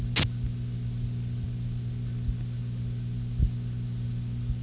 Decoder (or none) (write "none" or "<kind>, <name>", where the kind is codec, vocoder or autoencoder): none